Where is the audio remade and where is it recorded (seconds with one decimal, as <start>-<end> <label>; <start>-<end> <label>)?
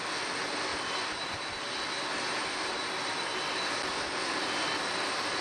0.0-5.4 remade